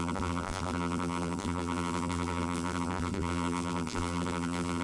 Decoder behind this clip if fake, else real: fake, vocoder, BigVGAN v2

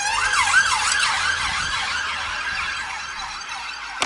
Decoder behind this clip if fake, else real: real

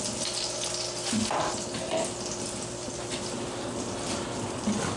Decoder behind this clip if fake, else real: real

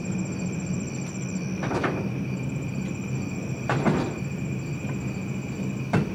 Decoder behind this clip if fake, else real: real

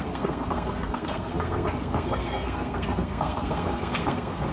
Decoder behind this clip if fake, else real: fake, codec, SNAC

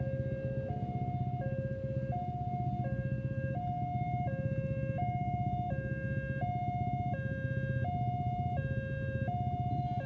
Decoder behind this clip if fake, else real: real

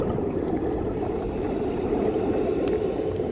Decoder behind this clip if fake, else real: fake, vocoder, BigVGAN v2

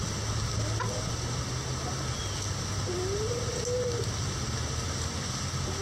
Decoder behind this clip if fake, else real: real